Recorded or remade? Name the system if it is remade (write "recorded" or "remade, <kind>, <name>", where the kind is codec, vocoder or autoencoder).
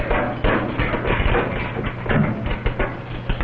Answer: recorded